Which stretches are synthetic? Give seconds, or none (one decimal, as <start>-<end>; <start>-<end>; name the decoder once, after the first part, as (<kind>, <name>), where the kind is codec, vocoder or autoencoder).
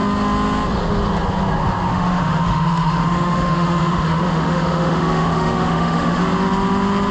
1.9-6.2 (autoencoder, DAC-VAE)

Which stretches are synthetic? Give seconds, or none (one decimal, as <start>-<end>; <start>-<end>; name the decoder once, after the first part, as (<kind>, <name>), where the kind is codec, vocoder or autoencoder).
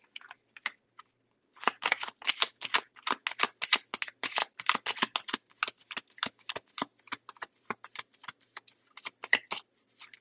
none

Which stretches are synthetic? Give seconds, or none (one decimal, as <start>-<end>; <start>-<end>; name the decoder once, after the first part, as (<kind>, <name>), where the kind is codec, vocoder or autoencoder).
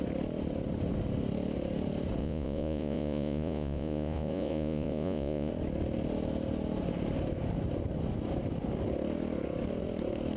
2.2-5.5 (vocoder, Vocos)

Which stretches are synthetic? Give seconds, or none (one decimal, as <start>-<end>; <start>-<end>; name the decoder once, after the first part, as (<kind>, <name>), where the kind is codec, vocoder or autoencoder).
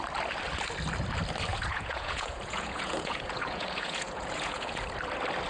1.5-4.8 (vocoder, Vocos)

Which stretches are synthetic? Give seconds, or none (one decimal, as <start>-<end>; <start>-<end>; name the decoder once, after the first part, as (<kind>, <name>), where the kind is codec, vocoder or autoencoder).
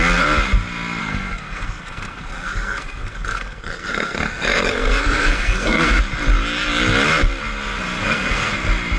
1.0-6.0 (codec, SNAC); 8.0-8.5